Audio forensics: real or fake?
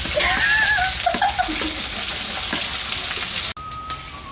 real